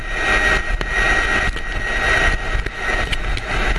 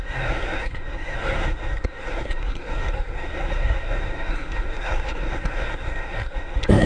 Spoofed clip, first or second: second